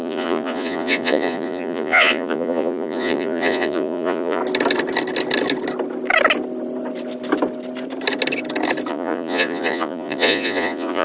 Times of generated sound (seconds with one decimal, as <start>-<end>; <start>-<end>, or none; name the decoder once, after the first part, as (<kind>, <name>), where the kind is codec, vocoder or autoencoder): 0.0-4.4 (vocoder, Vocos); 8.9-11.0